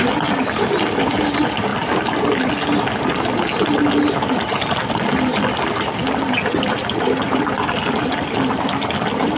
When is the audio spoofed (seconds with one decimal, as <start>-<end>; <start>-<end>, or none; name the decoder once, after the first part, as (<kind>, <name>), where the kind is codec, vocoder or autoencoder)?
none